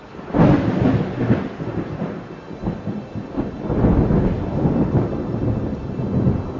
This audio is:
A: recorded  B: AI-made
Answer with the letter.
A